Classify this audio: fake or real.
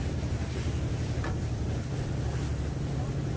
real